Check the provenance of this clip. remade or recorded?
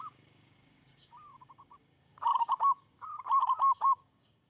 remade